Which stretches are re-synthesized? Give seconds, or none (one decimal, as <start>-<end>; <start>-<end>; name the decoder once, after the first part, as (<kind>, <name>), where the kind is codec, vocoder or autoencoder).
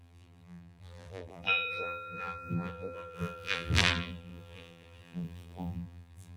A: 0.0-6.4 (vocoder, BigVGAN v2)